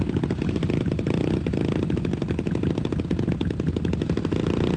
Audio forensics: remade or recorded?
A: recorded